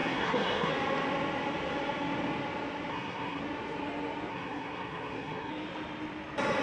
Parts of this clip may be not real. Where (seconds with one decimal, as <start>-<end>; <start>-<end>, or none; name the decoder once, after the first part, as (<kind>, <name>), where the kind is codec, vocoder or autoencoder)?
0.0-0.7 (codec, SNAC); 2.9-3.4; 4.3-5.5